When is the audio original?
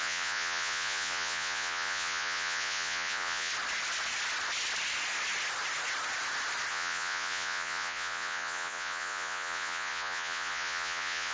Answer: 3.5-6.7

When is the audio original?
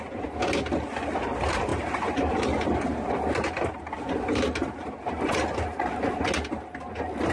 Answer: 0.0-1.7; 2.3-4.6; 5.4-7.3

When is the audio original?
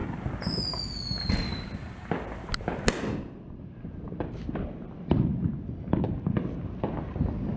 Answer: 0.0-7.6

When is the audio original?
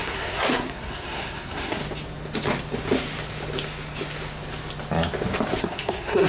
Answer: 1.8-5.6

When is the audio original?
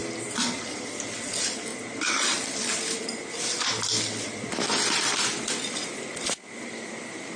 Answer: 0.0-7.4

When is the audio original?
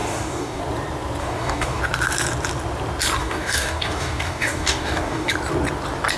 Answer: 0.6-1.2; 1.8-3.2; 5.3-6.2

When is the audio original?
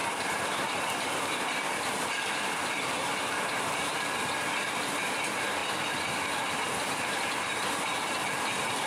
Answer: 5.6-6.5